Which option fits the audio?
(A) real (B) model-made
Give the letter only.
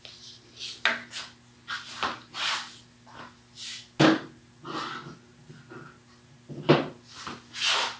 A